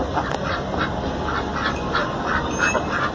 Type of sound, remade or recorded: recorded